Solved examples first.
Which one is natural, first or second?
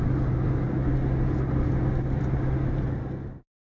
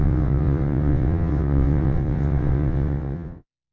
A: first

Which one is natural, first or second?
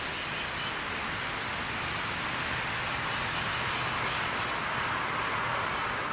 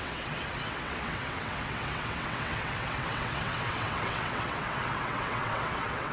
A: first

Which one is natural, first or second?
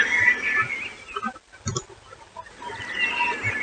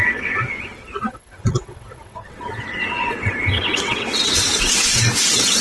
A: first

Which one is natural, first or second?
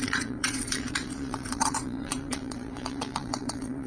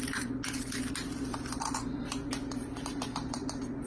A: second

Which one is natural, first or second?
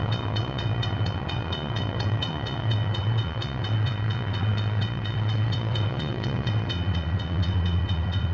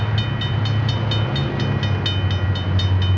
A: second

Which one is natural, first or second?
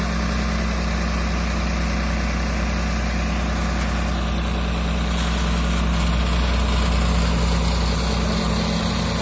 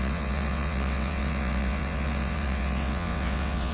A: first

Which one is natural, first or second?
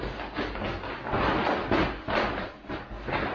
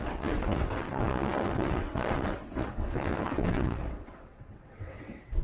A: first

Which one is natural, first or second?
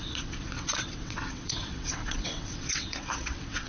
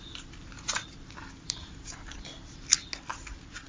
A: second